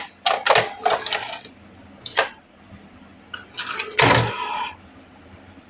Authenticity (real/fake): real